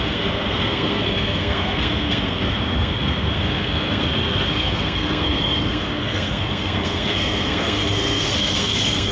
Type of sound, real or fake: fake